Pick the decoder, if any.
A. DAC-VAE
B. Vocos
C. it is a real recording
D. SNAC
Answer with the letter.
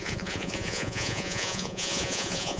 B